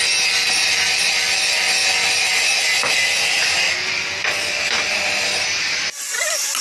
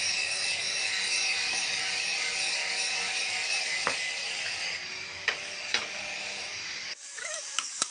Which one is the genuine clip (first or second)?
first